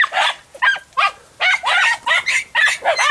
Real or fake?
real